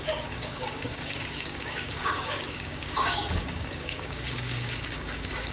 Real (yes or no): no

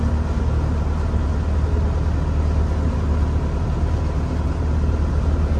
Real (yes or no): yes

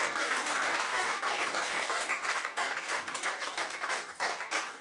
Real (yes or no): no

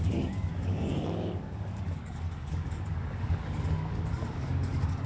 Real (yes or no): no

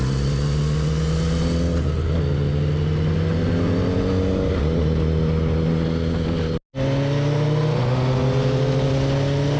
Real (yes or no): yes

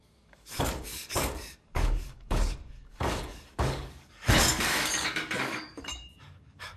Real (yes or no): no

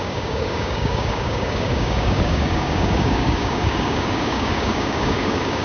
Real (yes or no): no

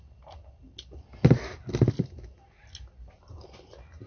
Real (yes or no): yes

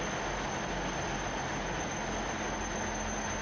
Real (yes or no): yes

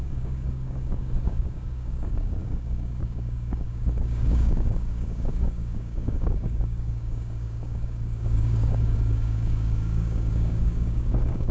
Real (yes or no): no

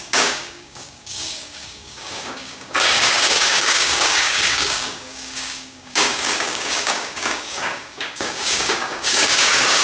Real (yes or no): no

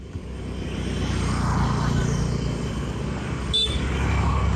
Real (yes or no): no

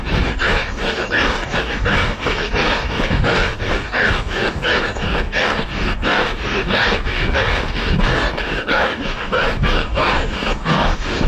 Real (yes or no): no